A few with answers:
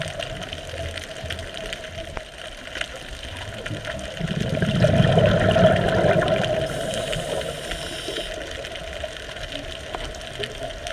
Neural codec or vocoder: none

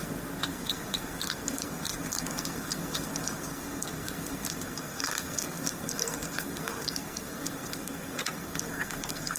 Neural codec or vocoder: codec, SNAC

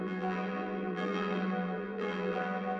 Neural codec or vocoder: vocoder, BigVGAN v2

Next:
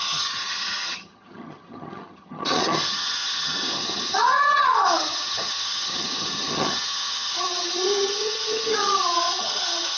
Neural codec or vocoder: vocoder, HiFi-GAN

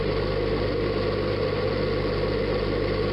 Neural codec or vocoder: none